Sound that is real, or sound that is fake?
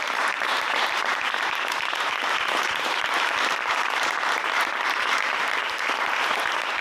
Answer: fake